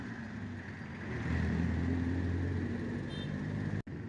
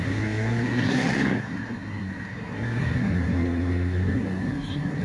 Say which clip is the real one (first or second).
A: first